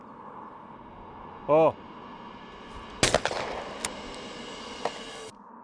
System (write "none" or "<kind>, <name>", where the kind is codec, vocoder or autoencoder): none